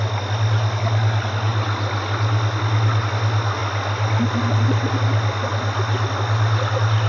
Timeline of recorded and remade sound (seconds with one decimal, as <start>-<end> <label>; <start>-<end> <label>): 0.0-7.1 recorded